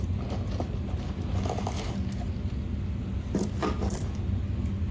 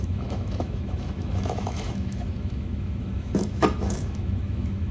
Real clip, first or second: first